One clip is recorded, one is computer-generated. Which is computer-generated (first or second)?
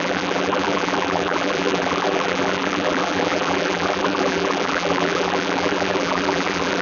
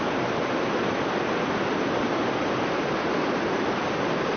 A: first